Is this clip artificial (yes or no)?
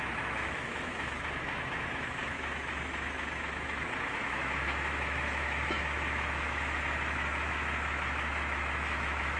yes